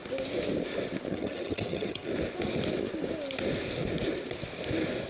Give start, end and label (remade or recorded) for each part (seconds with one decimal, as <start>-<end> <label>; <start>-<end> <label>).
0.0-1.1 recorded; 1.1-2.1 remade; 2.1-5.1 recorded